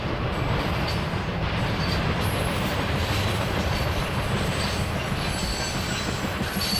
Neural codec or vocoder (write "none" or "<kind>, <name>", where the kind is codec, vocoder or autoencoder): none